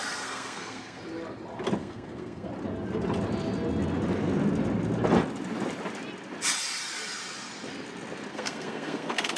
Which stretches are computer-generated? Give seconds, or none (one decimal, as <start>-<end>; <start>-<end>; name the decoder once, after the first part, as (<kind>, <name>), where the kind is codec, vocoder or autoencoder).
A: 0.0-1.0 (codec, SNAC); 1.8-2.5; 8.3-9.4